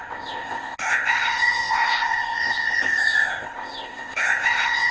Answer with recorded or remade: remade